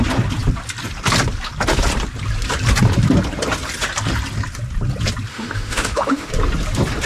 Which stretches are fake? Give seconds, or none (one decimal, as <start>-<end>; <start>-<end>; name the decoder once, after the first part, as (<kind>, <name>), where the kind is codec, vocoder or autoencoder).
5.3-6.3 (autoencoder, DAC-VAE)